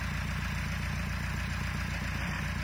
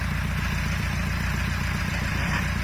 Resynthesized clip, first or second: second